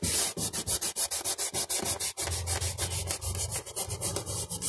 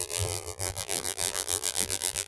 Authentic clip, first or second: first